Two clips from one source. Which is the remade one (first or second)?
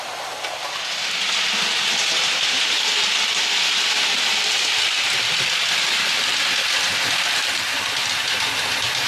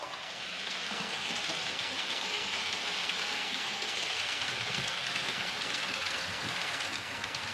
second